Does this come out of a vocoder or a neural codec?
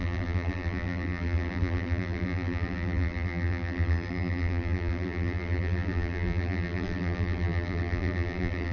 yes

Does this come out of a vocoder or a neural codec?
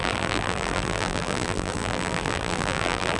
yes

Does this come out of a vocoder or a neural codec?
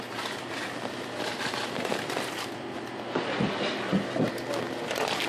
yes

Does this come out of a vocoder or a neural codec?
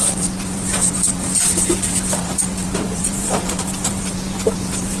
yes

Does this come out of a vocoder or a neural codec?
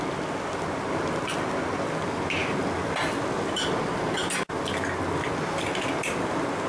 no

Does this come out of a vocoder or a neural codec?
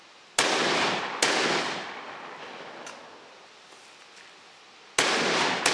no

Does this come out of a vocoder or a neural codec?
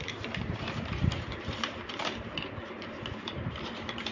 yes